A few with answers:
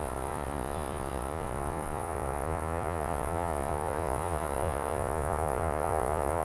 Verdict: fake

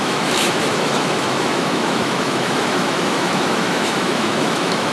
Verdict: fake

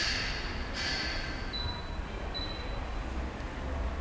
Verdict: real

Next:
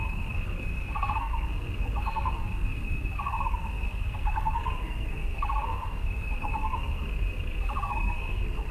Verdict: fake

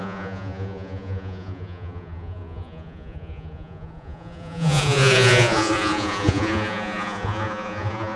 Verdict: fake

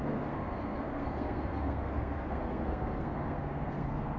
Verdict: fake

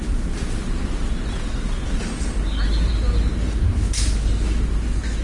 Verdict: real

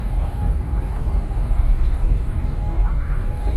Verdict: fake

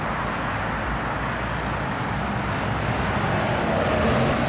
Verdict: real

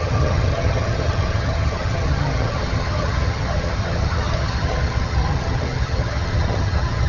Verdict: fake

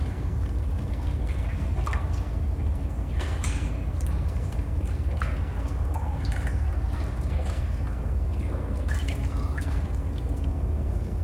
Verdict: fake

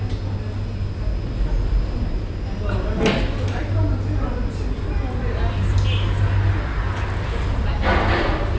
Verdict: real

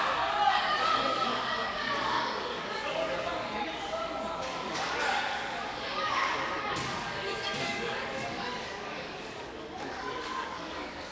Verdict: fake